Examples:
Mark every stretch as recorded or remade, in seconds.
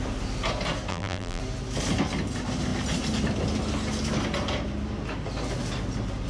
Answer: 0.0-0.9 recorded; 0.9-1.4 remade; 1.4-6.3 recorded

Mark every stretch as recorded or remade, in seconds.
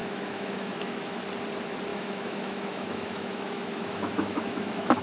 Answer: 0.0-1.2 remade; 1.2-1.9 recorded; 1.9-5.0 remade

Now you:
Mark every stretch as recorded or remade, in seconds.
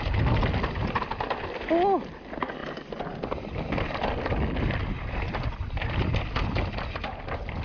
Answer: 0.0-2.6 recorded; 2.6-6.4 remade; 6.4-7.6 recorded